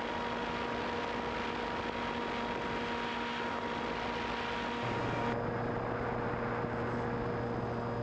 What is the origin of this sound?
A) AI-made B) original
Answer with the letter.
B